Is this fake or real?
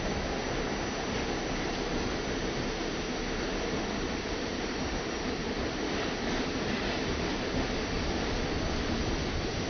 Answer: fake